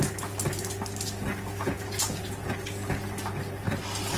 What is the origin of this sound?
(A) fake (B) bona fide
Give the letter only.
B